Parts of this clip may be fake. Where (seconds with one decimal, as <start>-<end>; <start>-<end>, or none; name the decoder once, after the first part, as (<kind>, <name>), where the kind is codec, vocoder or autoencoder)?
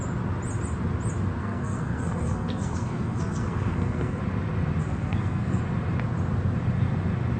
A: 1.4-4.2 (codec, SNAC); 4.8-5.6